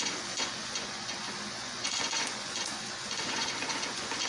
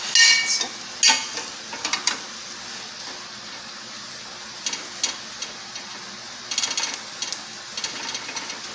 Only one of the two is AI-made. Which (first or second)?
first